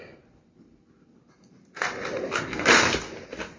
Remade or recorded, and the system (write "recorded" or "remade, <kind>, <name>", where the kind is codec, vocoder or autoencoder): recorded